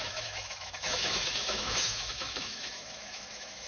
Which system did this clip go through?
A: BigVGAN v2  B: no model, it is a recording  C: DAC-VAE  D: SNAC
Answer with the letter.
C